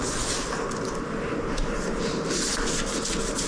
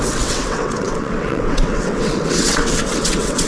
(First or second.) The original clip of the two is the first